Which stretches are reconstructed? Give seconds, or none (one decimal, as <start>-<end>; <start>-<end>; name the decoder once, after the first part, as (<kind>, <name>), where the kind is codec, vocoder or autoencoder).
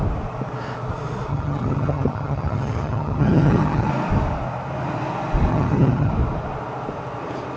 1.3-3.9 (vocoder, HiFi-GAN); 5.5-6.1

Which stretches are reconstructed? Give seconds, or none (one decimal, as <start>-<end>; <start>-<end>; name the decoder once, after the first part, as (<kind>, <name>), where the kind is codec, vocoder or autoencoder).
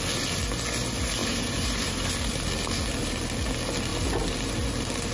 1.2-1.9 (vocoder, BigVGAN v2)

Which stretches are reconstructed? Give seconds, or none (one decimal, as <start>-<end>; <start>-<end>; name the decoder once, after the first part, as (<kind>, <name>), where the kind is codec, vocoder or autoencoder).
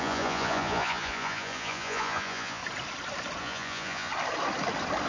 0.0-2.6 (vocoder, Vocos); 3.4-4.1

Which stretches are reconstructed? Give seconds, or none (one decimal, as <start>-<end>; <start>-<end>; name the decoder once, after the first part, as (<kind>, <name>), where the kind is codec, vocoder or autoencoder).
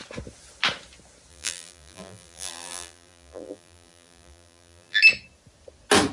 1.3-5.0 (vocoder, BigVGAN v2)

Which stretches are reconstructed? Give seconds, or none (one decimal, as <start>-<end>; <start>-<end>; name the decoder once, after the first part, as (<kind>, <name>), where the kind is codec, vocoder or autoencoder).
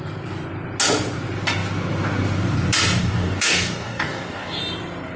3.0-4.6 (codec, DAC)